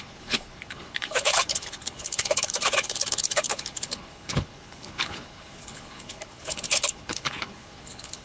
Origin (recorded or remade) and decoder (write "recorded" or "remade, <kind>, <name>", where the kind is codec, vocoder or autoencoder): remade, codec, HILCodec